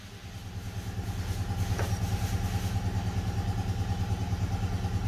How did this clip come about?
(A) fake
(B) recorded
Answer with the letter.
B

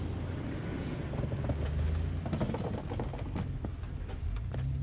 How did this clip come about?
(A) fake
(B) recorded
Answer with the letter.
B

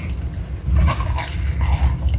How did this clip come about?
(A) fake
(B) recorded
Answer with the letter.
B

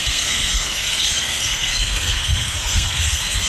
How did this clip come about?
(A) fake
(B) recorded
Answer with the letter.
A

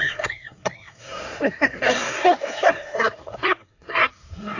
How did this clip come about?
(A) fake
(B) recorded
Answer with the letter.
A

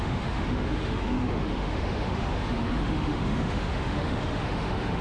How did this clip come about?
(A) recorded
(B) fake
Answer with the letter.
B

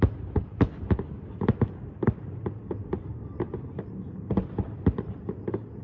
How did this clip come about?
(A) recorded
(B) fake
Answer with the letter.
B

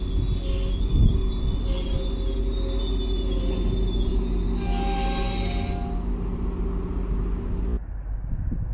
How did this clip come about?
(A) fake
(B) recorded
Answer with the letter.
B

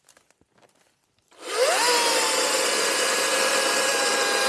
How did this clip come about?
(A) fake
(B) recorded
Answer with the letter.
B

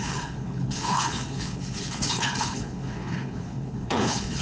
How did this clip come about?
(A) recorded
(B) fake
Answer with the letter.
B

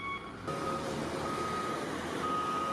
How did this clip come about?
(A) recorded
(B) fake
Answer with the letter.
A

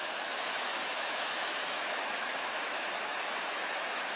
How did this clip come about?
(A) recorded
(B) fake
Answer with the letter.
B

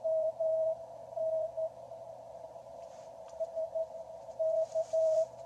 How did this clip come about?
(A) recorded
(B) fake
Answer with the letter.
B